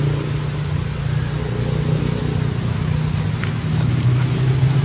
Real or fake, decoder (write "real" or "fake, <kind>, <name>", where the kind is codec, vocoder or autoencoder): real